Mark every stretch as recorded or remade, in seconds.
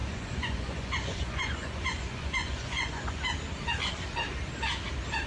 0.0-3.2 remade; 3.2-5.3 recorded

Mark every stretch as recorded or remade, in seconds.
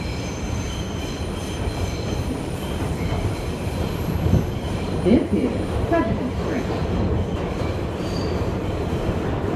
0.0-6.8 remade; 6.8-8.1 recorded; 8.1-9.6 remade